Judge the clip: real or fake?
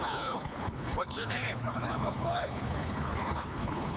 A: fake